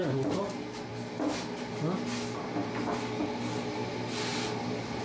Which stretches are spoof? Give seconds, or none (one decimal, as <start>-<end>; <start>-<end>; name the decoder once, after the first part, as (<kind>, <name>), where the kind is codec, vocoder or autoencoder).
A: none

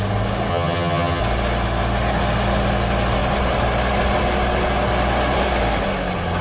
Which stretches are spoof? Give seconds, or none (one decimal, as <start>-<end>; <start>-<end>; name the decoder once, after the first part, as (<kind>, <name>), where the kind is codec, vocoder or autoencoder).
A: 0.5-1.2 (vocoder, HiFi-GAN)

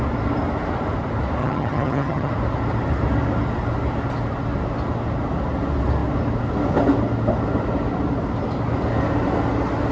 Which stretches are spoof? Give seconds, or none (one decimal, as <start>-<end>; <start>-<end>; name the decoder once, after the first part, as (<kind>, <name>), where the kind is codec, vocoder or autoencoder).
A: 1.4-2.3 (vocoder, HiFi-GAN)

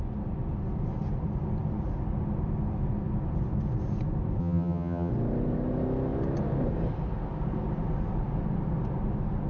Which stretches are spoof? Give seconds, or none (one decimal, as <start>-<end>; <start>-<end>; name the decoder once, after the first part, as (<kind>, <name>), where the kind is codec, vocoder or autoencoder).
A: 4.4-5.1 (vocoder, HiFi-GAN)

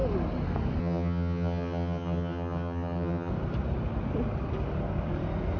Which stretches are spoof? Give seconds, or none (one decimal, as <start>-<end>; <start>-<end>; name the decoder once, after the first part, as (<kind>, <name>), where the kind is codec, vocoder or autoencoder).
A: 0.8-3.3 (vocoder, HiFi-GAN)

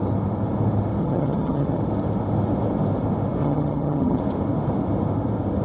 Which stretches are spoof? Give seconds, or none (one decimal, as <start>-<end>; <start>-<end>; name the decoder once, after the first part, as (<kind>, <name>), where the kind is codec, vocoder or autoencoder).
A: 1.0-1.8 (vocoder, HiFi-GAN); 3.4-4.2